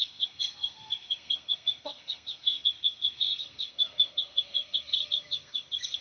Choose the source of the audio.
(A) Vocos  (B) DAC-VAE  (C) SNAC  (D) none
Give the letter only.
C